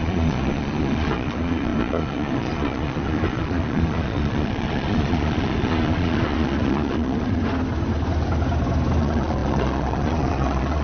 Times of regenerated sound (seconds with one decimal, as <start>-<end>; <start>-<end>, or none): 0.0-7.4; 9.0-10.8